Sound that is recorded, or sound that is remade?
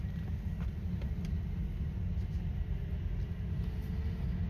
recorded